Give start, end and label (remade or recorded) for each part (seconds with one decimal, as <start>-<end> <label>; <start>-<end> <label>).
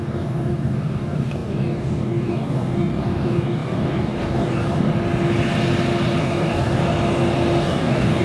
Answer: 0.0-4.9 remade; 4.9-6.2 recorded; 6.2-6.8 remade; 6.8-7.6 recorded; 7.6-8.2 remade